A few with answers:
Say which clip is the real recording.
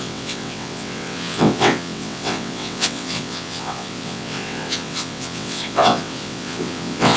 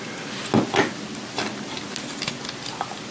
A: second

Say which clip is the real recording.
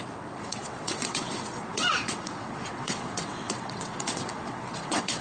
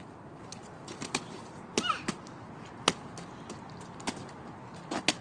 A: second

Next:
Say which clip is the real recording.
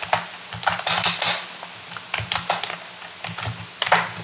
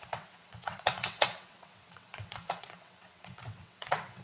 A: first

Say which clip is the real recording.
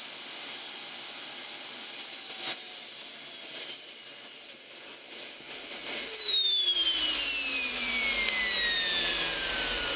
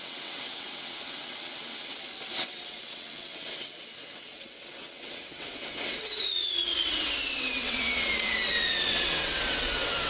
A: first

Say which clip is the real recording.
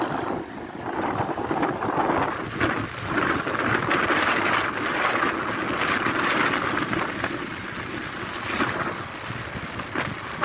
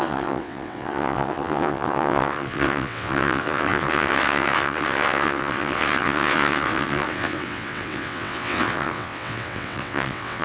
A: first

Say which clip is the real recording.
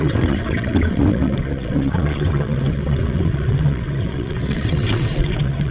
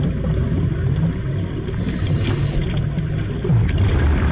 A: second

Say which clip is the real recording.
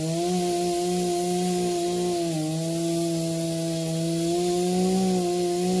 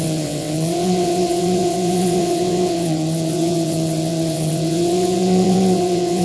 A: first